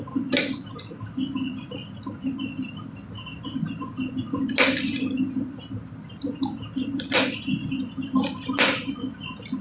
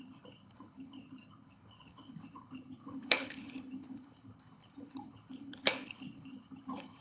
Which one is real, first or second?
first